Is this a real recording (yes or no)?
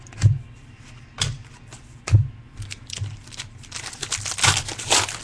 yes